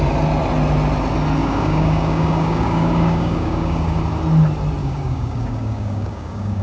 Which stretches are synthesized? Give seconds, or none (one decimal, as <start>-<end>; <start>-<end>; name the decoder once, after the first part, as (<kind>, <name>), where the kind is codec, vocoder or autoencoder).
1.4-4.0 (codec, DAC); 4.8-6.6